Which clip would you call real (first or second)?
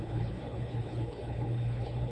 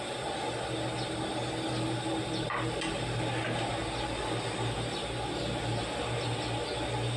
second